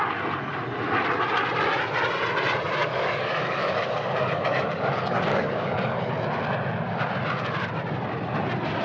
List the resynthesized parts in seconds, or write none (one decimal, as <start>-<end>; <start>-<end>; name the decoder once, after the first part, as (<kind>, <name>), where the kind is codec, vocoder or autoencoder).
2.8-6.1 (codec, DAC)